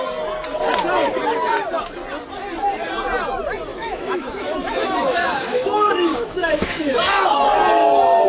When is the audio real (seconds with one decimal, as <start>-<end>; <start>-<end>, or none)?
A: 0.0-3.7; 6.9-8.3